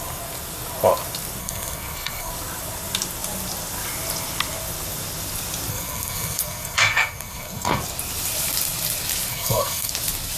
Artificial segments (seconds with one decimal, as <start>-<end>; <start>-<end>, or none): 1.4-2.3; 5.7-7.8; 9.3-9.9